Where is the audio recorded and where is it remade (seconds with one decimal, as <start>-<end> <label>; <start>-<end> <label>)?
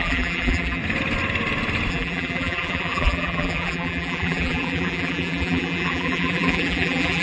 0.0-0.8 remade; 0.8-1.9 recorded; 1.9-7.2 remade